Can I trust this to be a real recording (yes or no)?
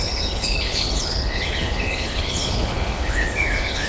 no